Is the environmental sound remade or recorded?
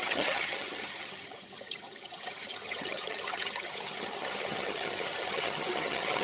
remade